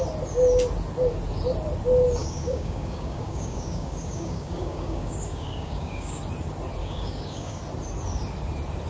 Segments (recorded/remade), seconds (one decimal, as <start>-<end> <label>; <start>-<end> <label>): 0.0-2.2 recorded; 2.2-6.2 remade; 6.2-6.8 recorded; 6.8-7.6 remade; 7.6-8.9 recorded